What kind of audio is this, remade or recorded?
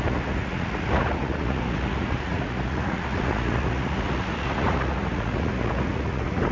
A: remade